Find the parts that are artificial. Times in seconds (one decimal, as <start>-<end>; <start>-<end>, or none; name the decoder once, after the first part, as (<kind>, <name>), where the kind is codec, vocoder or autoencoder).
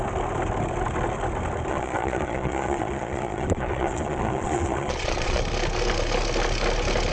1.7-5.4 (vocoder, Vocos)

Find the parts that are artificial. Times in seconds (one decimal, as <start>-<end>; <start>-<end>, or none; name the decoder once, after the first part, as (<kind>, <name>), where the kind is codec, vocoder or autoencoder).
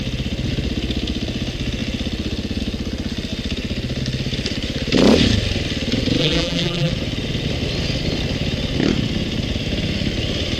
6.2-6.9 (vocoder, BigVGAN v2)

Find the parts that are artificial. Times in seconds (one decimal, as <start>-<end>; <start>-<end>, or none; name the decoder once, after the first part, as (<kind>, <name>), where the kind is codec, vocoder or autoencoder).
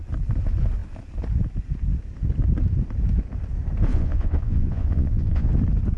3.9-5.5 (vocoder, Vocos)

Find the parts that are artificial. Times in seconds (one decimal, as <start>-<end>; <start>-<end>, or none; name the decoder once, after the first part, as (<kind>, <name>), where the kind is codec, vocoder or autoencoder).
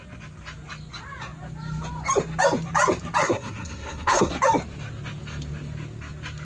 3.2-4.3 (codec, SNAC)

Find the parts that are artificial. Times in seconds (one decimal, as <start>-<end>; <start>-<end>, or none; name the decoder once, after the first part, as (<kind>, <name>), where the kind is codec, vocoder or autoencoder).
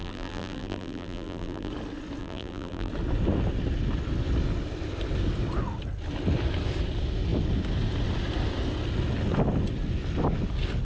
0.0-1.7 (vocoder, BigVGAN v2); 2.2-2.9